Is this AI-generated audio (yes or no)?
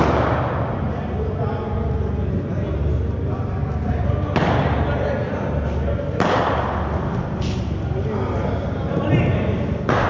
no